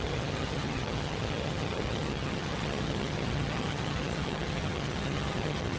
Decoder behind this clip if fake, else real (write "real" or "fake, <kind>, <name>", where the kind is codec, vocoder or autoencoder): fake, vocoder, HiFi-GAN